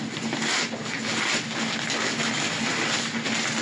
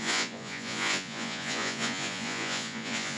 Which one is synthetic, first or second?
second